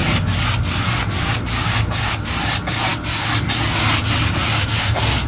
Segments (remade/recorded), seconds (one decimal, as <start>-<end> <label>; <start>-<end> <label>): 0.0-5.3 recorded